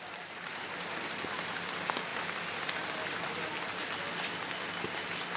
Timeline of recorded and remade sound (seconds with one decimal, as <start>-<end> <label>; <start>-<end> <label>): 0.0-5.4 recorded